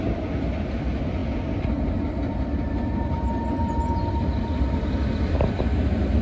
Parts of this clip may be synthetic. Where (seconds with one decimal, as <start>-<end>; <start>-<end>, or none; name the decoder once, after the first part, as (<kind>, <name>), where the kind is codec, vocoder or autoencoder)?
none